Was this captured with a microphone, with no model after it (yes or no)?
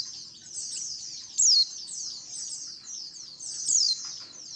yes